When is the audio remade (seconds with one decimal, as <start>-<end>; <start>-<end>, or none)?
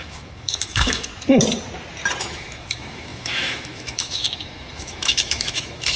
0.0-1.1; 2.2-6.0